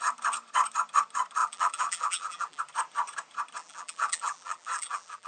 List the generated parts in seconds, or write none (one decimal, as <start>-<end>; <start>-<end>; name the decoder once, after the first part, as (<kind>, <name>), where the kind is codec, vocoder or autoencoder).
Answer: 1.4-2.6 (vocoder, BigVGAN v2); 3.6-5.3